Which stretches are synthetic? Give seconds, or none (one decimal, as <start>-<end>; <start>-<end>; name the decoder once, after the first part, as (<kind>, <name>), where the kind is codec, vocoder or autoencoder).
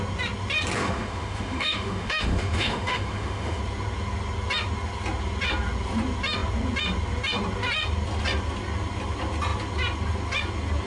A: 0.8-3.6 (autoencoder, DAC-VAE)